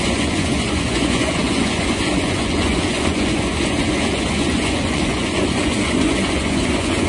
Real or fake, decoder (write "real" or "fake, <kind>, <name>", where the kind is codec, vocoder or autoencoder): fake, vocoder, Vocos